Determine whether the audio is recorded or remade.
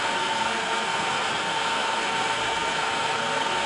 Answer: remade